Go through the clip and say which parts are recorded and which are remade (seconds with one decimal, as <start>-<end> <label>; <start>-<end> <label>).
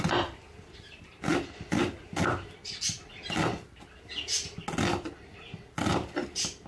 0.0-6.7 recorded